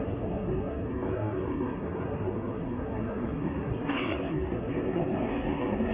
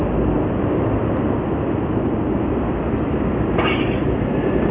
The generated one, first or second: first